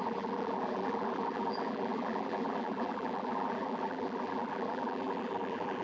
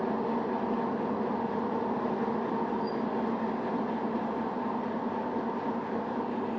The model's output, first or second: first